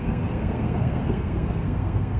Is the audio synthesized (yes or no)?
yes